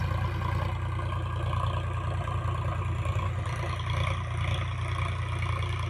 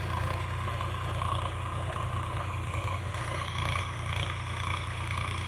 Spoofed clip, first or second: second